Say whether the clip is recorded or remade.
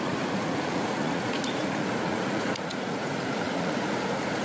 remade